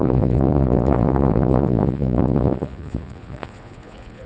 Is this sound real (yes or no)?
no